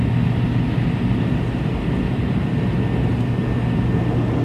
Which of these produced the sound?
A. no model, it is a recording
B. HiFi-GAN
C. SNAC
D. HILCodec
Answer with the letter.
A